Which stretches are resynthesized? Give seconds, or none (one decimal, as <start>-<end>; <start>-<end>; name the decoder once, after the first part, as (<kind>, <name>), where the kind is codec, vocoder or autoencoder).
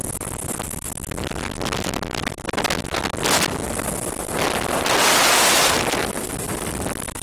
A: none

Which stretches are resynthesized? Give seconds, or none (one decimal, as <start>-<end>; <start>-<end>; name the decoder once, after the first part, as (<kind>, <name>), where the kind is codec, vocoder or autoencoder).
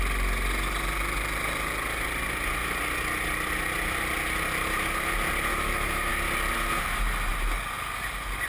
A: 5.5-6.1 (autoencoder, DAC-VAE)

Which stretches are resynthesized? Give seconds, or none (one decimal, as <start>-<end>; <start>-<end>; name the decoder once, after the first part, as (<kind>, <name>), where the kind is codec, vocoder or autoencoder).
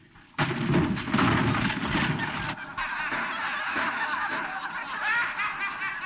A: 3.7-4.3 (autoencoder, DAC-VAE)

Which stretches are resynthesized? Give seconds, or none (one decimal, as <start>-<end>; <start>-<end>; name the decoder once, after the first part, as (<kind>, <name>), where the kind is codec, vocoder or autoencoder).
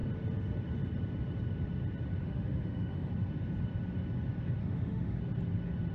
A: 2.2-3.1 (autoencoder, DAC-VAE); 4.6-5.2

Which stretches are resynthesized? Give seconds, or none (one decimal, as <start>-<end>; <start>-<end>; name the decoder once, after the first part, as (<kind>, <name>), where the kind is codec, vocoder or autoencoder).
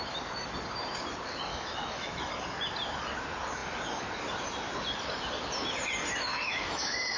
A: 1.5-2.3 (autoencoder, DAC-VAE); 6.3-7.2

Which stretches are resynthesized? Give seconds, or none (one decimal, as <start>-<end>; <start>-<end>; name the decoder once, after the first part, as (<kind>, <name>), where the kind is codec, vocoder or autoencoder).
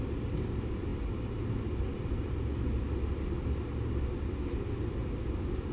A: none